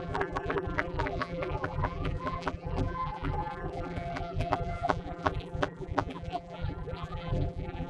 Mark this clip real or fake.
fake